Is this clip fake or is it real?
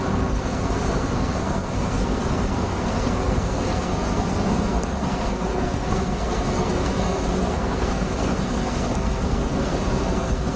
fake